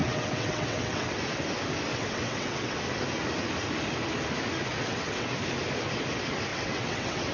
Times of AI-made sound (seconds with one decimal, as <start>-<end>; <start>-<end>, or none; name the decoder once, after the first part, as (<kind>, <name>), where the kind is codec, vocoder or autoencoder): 0.0-1.2 (vocoder, WaveNeXt); 1.9-2.8; 4.7-5.3; 6.5-7.3

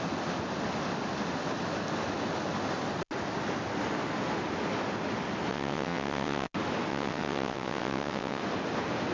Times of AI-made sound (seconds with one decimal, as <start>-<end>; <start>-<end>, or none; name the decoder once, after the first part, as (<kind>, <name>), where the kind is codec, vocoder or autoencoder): 5.5-6.5 (vocoder, WaveNeXt); 6.9-8.4

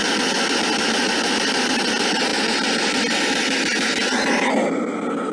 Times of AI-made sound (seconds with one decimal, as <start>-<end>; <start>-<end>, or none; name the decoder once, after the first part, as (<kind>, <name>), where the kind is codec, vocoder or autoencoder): none

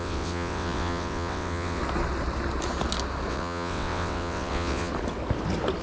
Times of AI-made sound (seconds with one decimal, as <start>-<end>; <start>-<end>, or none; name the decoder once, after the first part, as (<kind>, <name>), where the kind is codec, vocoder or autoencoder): 0.0-1.8 (vocoder, WaveNeXt); 3.3-4.9

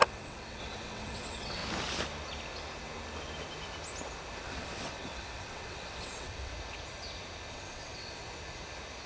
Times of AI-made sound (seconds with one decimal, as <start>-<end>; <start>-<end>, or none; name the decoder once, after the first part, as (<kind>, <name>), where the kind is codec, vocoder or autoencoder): 0.0-1.6 (vocoder, WaveNeXt); 4.4-6.5; 7.5-8.2